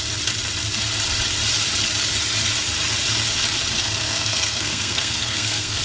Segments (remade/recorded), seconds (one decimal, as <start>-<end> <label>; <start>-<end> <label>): 0.0-3.8 recorded; 3.8-5.8 remade